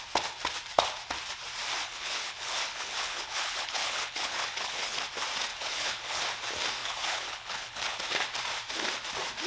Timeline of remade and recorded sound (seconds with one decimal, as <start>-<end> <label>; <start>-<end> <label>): 0.0-1.8 recorded; 1.8-5.0 remade; 5.0-5.5 recorded; 5.5-6.2 remade; 6.2-6.8 recorded; 6.8-8.0 remade; 8.0-9.5 recorded